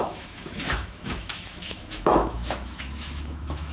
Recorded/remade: remade